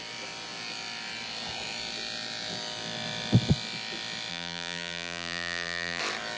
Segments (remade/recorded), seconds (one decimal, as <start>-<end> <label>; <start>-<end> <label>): 0.0-4.3 recorded; 4.3-6.0 remade; 6.0-6.4 recorded

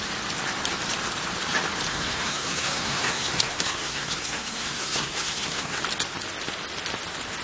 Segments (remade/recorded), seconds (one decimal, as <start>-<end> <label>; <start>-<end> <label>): 0.0-1.9 recorded; 1.9-5.8 remade; 5.8-7.4 recorded

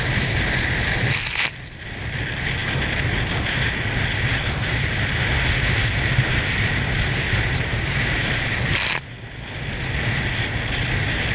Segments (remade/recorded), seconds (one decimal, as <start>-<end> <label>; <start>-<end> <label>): 0.0-11.3 recorded

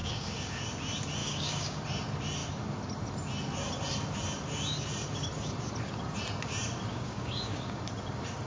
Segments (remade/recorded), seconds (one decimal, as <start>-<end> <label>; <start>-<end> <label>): 0.0-0.6 remade; 0.6-1.2 recorded; 1.2-1.8 remade; 1.8-6.9 recorded; 6.9-7.8 remade; 7.8-8.5 recorded

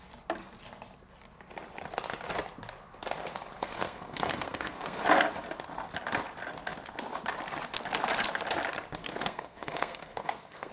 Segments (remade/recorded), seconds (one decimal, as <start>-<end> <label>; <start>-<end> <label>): 0.0-3.6 recorded; 3.6-5.0 remade; 5.0-9.0 recorded; 9.0-10.7 remade

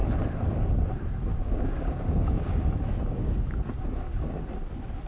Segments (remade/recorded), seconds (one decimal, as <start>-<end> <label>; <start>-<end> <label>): 0.0-1.3 recorded; 1.3-2.4 remade; 2.4-5.1 recorded

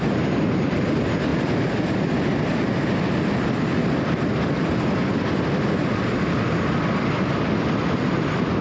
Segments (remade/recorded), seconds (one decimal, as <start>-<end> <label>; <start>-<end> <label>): 0.0-3.8 recorded; 3.8-8.6 remade